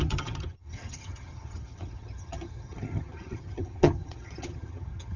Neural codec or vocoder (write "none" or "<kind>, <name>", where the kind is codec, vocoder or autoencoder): vocoder, HiFi-GAN